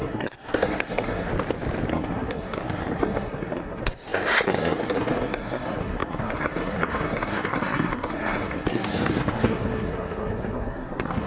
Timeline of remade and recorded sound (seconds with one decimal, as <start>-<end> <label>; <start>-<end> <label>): 0.0-1.3 remade; 1.3-1.9 recorded; 1.9-11.3 remade